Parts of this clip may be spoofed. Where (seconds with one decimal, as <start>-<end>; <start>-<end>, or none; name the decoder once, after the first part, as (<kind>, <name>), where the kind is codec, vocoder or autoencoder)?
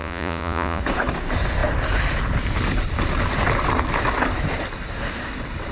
0.0-0.8 (vocoder, Vocos)